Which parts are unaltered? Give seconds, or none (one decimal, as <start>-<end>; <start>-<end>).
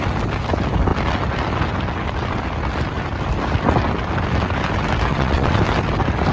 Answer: 0.0-5.1; 5.6-6.3